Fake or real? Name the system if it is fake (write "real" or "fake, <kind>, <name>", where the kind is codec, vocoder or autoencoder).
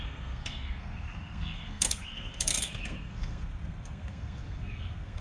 fake, codec, SNAC